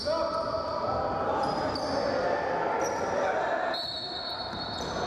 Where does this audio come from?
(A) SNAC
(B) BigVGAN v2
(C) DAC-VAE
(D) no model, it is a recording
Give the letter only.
D